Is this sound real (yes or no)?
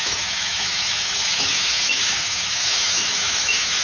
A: no